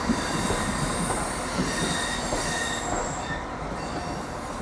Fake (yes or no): no